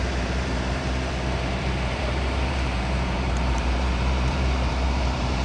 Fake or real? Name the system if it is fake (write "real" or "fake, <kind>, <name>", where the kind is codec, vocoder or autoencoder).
fake, vocoder, BigVGAN v2